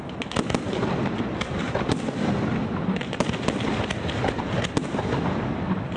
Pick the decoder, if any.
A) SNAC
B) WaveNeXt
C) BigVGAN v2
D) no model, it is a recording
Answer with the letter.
D